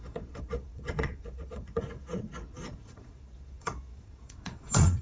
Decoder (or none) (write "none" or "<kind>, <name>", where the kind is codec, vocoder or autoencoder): vocoder, Vocos